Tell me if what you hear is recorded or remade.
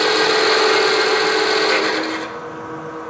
recorded